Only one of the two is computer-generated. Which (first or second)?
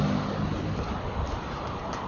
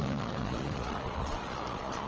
second